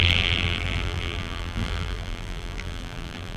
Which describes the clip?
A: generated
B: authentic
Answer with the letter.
A